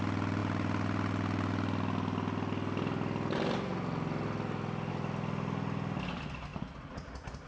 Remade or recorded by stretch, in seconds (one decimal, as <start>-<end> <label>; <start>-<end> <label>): 0.0-7.5 recorded